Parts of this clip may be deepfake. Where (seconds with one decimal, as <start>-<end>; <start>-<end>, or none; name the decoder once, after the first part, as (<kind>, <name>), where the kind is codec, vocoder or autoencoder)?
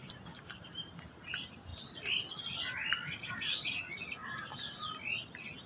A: none